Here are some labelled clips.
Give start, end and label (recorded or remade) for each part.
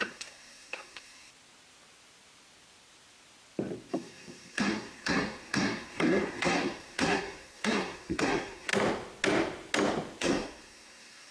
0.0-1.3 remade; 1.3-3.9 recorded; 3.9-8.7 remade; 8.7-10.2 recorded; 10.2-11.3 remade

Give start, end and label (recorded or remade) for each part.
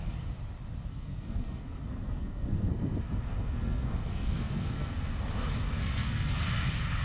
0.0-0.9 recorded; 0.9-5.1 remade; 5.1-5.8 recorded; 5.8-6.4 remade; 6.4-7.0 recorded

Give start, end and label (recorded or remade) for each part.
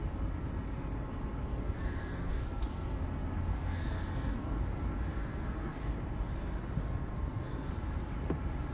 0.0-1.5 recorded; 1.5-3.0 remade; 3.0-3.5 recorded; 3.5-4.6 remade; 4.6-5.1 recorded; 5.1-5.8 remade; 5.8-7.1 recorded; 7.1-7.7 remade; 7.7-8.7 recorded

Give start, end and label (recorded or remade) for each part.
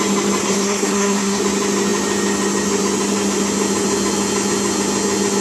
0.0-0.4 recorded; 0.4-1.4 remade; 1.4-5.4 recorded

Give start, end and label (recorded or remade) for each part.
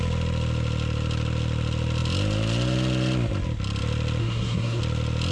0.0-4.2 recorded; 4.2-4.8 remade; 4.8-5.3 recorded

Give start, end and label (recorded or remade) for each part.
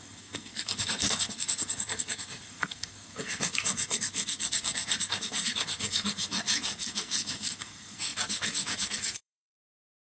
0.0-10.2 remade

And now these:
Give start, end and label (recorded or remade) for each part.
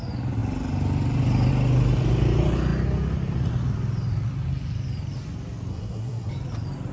0.0-5.7 recorded; 5.7-6.3 remade; 6.3-6.9 recorded